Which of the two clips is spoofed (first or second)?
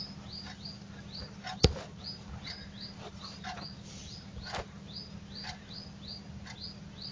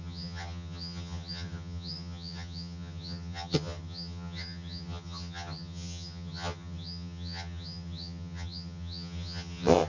second